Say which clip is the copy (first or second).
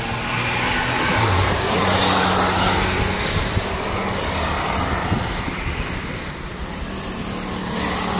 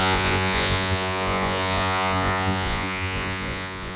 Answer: second